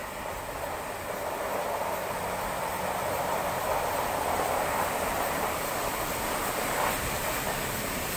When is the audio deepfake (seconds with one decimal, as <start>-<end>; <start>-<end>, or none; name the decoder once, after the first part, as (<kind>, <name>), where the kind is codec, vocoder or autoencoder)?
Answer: 1.3-8.2 (vocoder, BigVGAN v2)